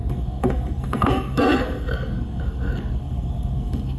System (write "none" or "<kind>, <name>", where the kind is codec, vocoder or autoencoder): codec, SNAC